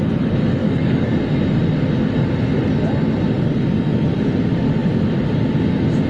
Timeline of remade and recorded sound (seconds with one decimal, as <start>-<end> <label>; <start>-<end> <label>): 0.0-0.6 recorded; 0.6-1.2 remade; 1.2-6.1 recorded